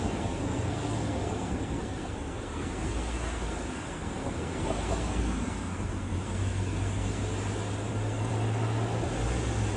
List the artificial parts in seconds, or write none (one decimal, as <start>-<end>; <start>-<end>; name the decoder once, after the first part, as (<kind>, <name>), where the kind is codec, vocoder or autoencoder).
0.0-7.2 (codec, SNAC); 7.9-8.3

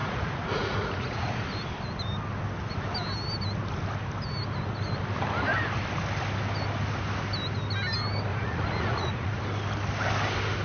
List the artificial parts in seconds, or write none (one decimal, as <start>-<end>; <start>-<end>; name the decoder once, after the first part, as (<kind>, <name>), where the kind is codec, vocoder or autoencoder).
0.0-1.4 (vocoder, Vocos); 8.3-9.4

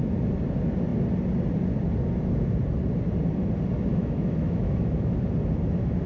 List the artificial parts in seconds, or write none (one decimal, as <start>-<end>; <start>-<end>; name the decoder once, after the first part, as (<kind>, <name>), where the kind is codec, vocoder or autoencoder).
3.9-5.2 (autoencoder, DAC-VAE)

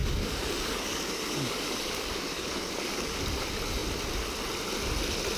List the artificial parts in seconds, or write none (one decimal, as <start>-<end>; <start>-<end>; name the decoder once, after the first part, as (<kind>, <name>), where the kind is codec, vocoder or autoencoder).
0.0-3.2 (codec, DAC)

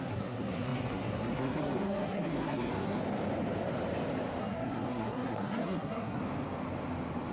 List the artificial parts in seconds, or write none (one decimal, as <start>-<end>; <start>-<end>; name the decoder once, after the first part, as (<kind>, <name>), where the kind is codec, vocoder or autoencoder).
0.0-3.0 (codec, SNAC); 4.4-6.2